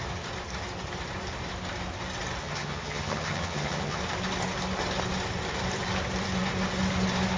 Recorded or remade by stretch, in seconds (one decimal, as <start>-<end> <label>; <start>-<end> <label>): 0.0-2.4 recorded; 2.4-4.0 remade; 4.0-7.4 recorded